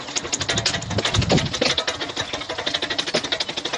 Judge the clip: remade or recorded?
recorded